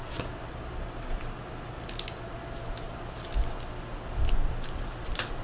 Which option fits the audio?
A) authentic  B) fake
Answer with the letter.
A